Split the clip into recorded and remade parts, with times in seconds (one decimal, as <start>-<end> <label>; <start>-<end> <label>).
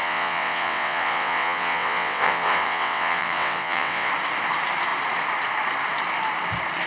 0.0-4.1 remade; 4.1-6.9 recorded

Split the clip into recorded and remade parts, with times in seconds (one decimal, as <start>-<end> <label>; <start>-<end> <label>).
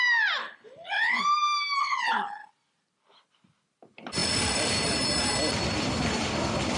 0.0-0.4 recorded; 0.4-1.2 remade; 1.2-1.8 recorded; 1.8-2.5 remade; 2.5-6.8 recorded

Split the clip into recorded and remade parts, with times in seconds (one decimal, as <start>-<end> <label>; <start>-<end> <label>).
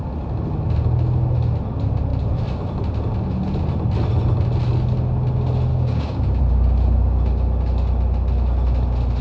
0.0-5.7 recorded; 5.7-6.4 remade; 6.4-9.2 recorded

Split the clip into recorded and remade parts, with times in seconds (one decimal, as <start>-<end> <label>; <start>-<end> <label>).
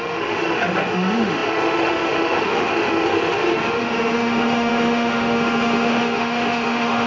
0.0-7.1 remade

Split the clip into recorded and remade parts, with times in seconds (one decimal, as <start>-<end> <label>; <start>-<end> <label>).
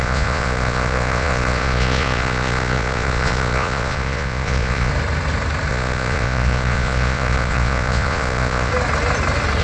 0.0-4.9 remade; 4.9-5.7 recorded; 5.7-8.7 remade; 8.7-9.6 recorded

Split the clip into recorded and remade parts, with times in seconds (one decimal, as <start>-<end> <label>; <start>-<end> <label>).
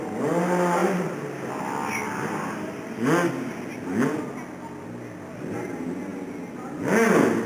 0.0-7.5 recorded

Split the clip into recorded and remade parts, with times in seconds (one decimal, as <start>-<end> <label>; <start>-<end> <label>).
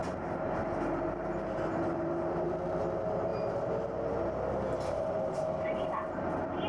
0.0-6.7 recorded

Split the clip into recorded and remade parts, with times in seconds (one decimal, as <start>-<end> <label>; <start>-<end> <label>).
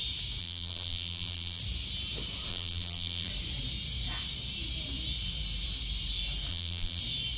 0.0-0.4 recorded; 0.4-1.6 remade; 1.6-2.5 recorded; 2.5-3.3 remade; 3.3-6.5 recorded; 6.5-7.0 remade; 7.0-7.4 recorded